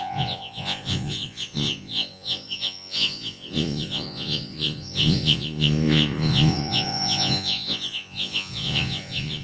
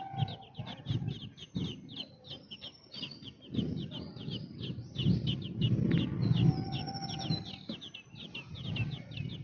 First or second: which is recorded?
second